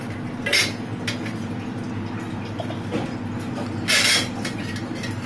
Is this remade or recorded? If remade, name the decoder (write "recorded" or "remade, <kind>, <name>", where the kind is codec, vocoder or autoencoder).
recorded